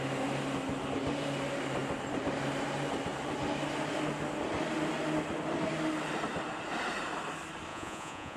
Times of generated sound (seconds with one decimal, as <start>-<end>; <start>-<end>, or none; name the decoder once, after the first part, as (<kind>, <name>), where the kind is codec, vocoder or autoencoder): 7.7-8.4 (vocoder, Vocos)